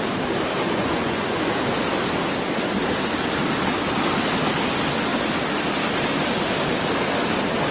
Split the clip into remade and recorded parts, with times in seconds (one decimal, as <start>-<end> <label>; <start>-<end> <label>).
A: 0.0-0.6 recorded; 0.6-1.5 remade; 1.5-7.7 recorded